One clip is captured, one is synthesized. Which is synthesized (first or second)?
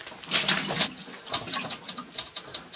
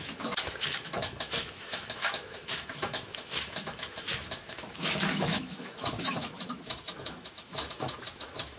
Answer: second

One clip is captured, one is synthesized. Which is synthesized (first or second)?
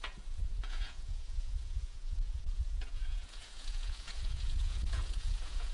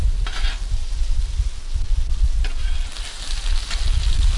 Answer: first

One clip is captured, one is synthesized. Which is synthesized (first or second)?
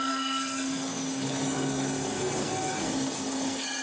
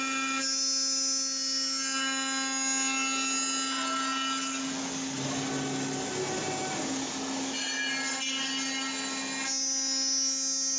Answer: first